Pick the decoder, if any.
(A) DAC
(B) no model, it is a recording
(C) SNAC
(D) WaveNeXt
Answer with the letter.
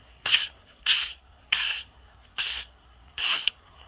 C